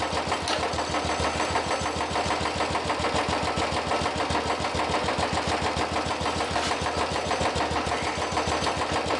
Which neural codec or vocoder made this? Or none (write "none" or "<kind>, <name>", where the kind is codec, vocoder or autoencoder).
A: none